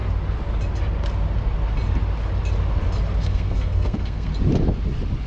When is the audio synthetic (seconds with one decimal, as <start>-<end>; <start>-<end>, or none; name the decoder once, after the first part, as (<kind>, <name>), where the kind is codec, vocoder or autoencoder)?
3.2-4.3 (codec, SNAC)